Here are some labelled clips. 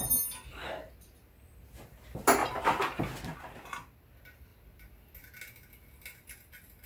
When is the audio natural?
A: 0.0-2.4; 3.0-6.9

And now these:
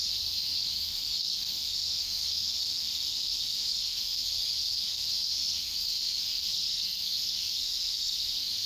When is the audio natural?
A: none

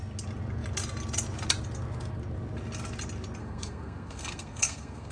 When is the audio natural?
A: 0.0-3.4

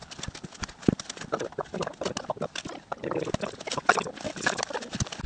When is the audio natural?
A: 0.0-5.3

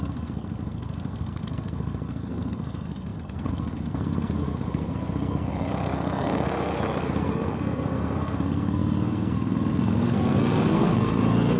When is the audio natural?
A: none